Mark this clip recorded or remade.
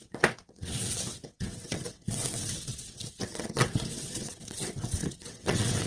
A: remade